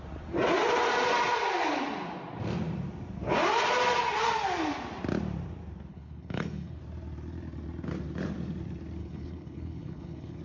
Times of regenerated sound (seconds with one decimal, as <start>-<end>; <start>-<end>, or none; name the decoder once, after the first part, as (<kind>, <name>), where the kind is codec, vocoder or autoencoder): 5.9-6.8 (codec, HILCodec); 9.0-10.4